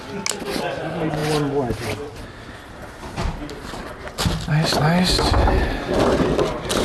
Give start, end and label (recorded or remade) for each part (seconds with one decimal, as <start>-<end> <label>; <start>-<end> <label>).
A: 0.0-6.8 recorded